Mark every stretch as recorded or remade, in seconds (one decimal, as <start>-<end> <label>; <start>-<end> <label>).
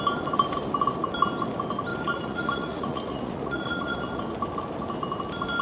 0.0-1.9 recorded; 1.9-4.2 remade; 4.2-5.6 recorded